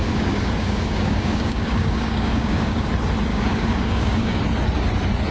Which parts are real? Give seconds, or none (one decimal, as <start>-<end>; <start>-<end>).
2.9-3.3; 4.4-5.3